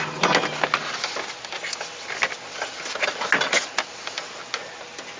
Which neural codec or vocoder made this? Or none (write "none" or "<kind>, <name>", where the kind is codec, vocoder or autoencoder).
none